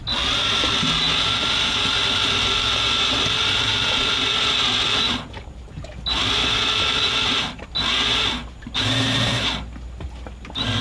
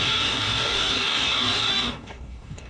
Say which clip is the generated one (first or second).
second